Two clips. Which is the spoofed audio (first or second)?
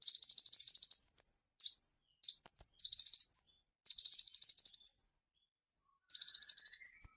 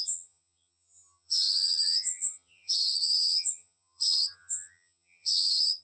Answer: second